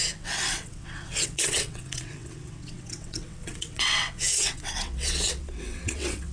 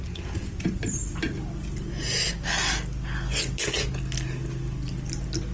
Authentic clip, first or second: second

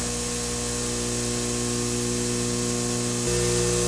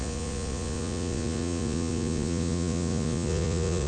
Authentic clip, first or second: first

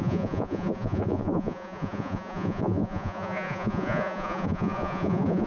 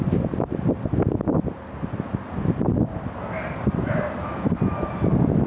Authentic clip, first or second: second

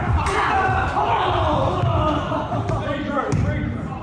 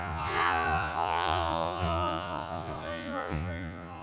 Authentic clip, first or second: first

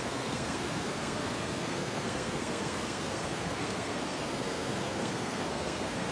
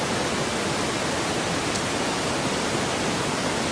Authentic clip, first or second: second